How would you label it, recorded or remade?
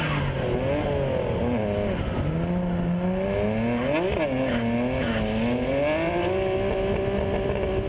recorded